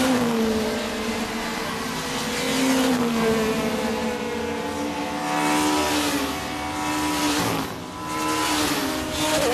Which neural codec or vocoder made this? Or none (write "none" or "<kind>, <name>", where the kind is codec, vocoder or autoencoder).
none